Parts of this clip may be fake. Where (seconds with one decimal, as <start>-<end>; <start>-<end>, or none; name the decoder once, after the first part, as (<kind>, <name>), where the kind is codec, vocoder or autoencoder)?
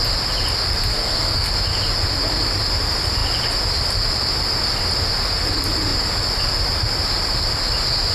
0.9-1.5 (codec, SNAC)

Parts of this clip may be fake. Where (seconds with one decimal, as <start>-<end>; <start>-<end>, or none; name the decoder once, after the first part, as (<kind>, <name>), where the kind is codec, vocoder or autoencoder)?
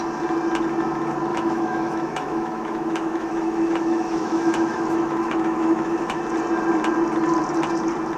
1.3-6.2 (autoencoder, DAC-VAE)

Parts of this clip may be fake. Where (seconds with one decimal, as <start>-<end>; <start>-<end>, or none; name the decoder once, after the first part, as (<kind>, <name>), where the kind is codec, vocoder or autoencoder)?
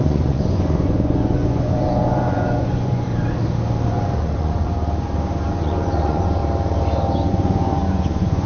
0.0-3.1 (vocoder, Vocos); 3.9-4.7; 5.5-6.4; 7.3-8.5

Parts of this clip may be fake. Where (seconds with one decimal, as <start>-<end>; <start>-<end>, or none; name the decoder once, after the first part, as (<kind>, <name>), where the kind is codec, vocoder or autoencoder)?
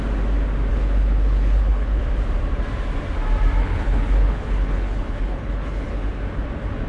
0.7-2.0 (codec, HILCodec); 3.6-6.1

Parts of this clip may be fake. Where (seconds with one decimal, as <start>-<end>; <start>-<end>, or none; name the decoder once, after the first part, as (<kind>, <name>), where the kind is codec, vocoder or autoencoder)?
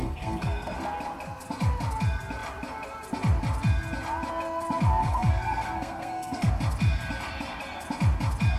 0.0-0.8 (codec, SNAC); 5.0-6.5